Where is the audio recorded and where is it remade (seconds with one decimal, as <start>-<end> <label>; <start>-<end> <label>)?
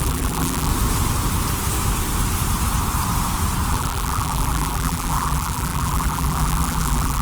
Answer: 0.0-0.7 remade; 0.7-3.7 recorded; 3.7-7.2 remade